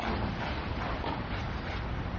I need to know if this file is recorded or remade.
recorded